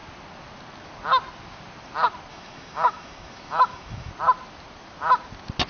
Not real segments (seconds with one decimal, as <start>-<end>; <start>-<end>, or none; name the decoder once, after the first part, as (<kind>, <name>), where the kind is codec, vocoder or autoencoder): 2.3-4.1 (autoencoder, DAC-VAE)